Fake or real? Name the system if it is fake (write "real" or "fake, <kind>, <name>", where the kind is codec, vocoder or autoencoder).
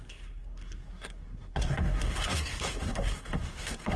fake, codec, SNAC